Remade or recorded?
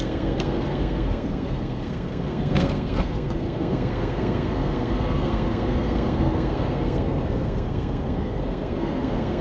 remade